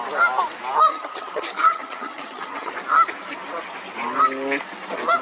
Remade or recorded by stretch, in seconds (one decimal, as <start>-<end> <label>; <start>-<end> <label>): 0.0-0.9 recorded; 0.9-2.7 remade; 2.7-5.2 recorded